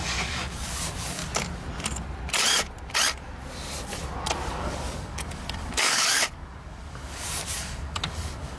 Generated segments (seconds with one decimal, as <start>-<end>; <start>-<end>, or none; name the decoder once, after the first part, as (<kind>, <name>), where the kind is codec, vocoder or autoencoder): 0.0-1.2 (codec, DAC); 4.5-8.6